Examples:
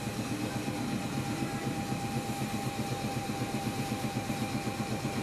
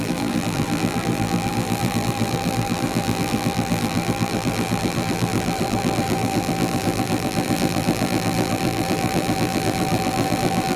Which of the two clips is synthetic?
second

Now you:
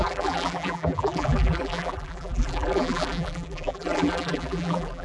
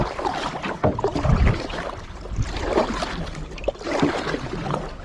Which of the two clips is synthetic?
first